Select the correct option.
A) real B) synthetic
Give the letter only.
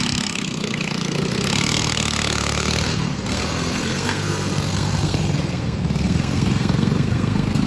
B